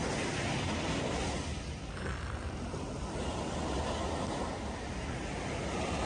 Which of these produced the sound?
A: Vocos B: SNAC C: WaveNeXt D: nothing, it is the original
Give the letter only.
D